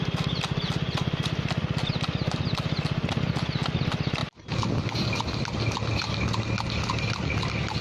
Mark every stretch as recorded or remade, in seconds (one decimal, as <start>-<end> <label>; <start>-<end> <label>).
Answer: 0.0-7.8 recorded